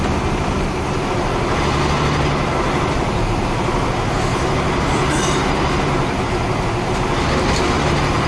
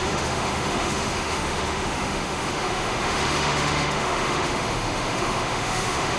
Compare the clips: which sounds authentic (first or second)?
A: first